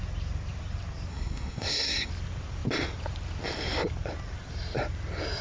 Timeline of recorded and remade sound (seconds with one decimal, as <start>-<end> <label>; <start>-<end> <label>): 0.0-1.1 recorded; 1.1-2.1 remade; 2.1-5.4 recorded